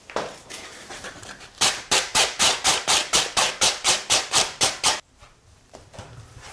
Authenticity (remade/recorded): remade